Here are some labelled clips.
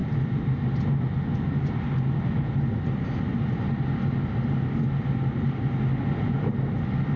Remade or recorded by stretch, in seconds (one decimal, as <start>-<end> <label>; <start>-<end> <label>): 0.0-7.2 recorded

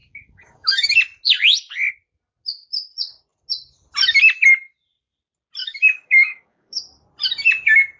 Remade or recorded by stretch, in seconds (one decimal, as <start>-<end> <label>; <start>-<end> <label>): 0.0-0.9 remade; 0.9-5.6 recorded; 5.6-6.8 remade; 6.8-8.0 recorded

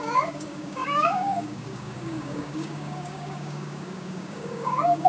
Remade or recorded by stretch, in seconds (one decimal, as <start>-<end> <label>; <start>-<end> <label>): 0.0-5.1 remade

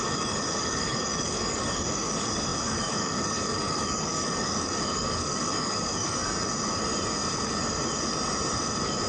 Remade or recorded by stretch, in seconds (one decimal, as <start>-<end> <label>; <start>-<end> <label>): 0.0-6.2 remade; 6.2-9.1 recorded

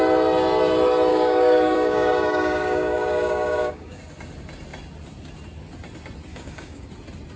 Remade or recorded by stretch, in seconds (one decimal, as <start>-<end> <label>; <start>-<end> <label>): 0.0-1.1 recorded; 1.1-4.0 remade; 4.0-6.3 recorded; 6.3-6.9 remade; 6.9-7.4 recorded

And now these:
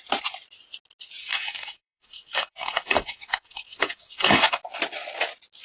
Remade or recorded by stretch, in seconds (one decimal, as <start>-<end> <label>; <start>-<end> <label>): 0.0-1.2 recorded; 1.2-4.6 remade; 4.6-5.6 recorded

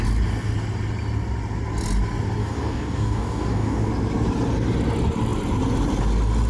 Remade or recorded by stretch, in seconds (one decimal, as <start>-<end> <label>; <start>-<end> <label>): 0.0-2.4 recorded; 2.4-3.9 remade; 3.9-6.5 recorded

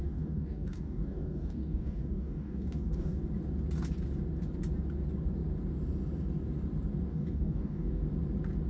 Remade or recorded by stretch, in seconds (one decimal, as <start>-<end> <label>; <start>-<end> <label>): 0.0-3.2 remade; 3.2-7.1 recorded; 7.1-8.0 remade; 8.0-8.7 recorded